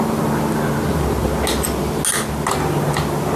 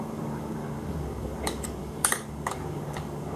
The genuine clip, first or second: first